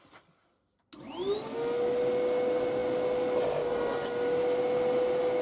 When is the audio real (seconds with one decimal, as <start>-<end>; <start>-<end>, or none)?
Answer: 0.0-5.4